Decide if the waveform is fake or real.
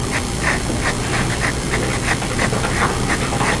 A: real